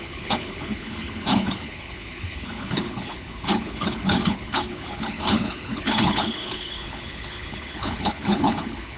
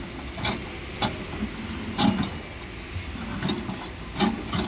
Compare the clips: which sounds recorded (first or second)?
second